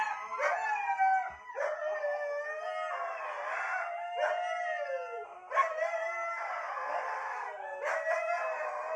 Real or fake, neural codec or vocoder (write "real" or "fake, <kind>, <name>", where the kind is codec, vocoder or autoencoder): real